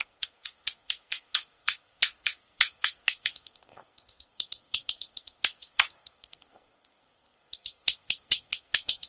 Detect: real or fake fake